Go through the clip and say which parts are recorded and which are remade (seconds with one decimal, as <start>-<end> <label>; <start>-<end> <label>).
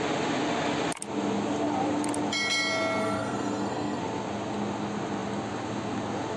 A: 0.0-3.0 recorded; 3.0-4.0 remade; 4.0-6.4 recorded